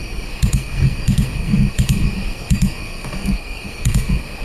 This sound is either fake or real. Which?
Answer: fake